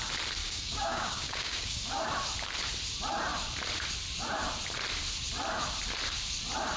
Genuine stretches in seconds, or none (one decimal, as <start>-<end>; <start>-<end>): 0.0-0.4; 1.9-6.8